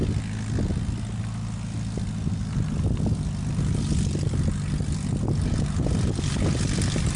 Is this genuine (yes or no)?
yes